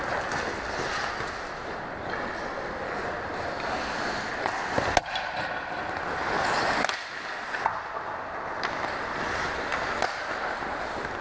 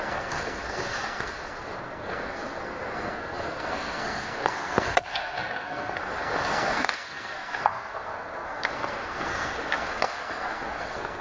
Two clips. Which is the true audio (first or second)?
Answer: first